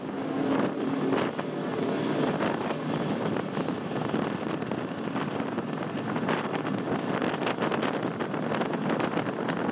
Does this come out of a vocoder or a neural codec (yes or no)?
no